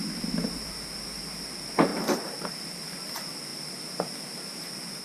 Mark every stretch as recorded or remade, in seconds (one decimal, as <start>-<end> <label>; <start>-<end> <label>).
0.0-5.0 recorded